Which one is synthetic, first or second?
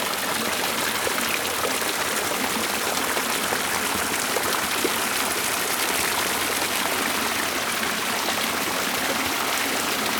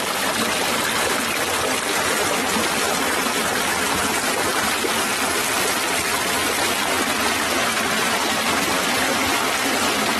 second